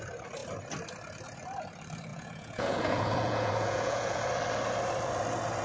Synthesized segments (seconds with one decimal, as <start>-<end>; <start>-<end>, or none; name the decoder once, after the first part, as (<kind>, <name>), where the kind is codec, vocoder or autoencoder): 2.1-4.2 (vocoder, Vocos)